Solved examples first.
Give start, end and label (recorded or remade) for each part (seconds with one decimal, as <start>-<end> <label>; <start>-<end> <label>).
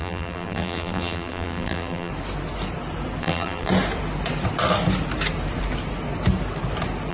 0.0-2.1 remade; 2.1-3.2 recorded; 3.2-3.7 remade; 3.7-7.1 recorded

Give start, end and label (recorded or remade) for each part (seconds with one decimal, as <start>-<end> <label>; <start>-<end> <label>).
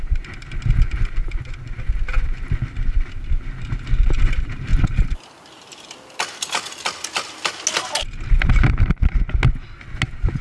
0.0-4.7 recorded; 4.7-5.2 remade; 5.2-10.4 recorded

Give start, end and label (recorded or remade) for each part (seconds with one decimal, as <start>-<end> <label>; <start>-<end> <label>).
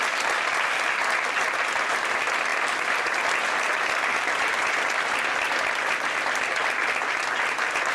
0.0-7.9 recorded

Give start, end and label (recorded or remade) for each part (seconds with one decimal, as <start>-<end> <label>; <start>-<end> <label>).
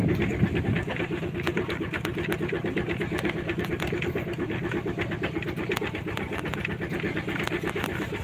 0.0-0.6 remade; 0.6-8.2 recorded